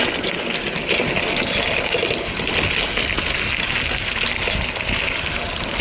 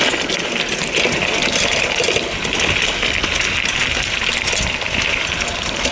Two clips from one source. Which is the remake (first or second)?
second